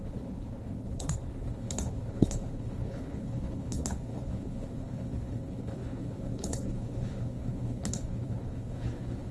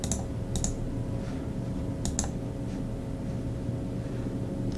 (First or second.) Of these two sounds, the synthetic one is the first